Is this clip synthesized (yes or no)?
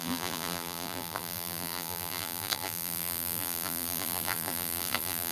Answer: yes